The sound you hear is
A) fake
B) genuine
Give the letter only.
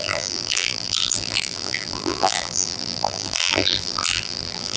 A